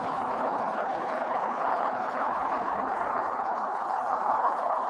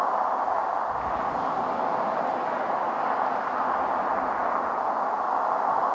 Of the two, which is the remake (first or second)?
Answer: first